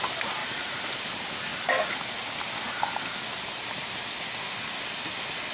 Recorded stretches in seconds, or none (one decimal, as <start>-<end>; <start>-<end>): 0.0-0.4; 0.9-5.5